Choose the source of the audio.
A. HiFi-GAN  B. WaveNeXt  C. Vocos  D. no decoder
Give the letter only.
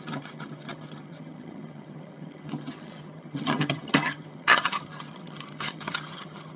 A